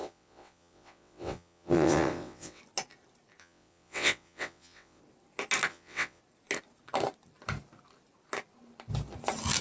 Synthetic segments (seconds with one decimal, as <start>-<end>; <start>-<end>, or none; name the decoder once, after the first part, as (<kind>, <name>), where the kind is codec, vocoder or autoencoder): 0.0-2.6 (vocoder, WaveNeXt); 3.4-5.0; 5.7-6.2